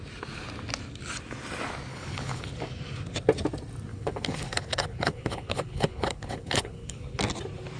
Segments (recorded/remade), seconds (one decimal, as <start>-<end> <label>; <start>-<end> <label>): 0.0-1.9 recorded; 1.9-2.5 remade; 2.5-3.9 recorded; 3.9-7.2 remade; 7.2-7.8 recorded

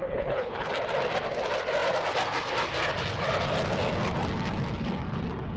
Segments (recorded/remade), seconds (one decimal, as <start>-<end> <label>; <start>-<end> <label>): 0.0-0.7 remade; 0.7-5.6 recorded

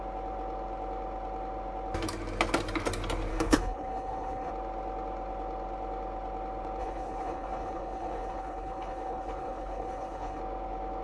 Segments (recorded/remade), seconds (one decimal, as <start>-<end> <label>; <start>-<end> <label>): 0.0-3.3 recorded; 3.3-4.5 remade; 4.5-6.8 recorded; 6.8-10.4 remade; 10.4-11.0 recorded